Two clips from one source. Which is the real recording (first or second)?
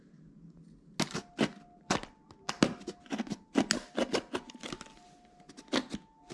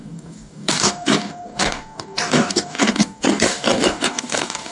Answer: first